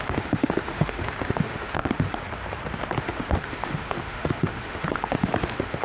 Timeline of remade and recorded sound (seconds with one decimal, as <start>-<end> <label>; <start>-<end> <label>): 0.0-2.2 remade; 2.2-3.0 recorded; 3.0-5.8 remade